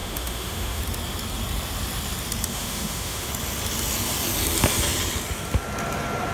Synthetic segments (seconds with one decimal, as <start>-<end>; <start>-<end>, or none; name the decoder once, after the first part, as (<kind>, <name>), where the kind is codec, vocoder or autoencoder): 0.0-0.8 (autoencoder, DAC-VAE); 2.5-3.3